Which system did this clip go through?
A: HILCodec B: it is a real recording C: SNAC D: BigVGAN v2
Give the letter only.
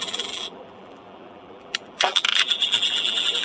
D